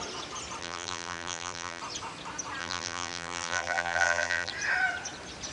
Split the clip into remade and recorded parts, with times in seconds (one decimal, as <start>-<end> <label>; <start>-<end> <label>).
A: 0.0-0.6 recorded; 0.6-1.8 remade; 1.8-2.6 recorded; 2.6-4.5 remade; 4.5-5.5 recorded